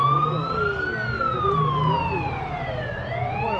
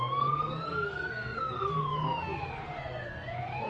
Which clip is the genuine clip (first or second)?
first